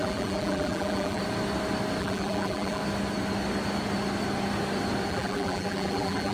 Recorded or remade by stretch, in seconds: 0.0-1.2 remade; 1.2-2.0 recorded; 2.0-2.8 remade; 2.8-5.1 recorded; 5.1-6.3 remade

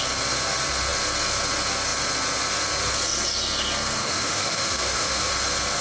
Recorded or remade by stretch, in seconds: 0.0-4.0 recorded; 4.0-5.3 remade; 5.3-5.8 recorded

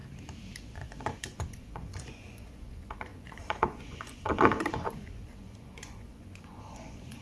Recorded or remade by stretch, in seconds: 0.0-0.6 recorded; 0.6-7.2 remade

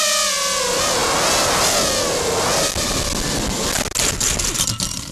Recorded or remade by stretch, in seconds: 0.0-5.1 recorded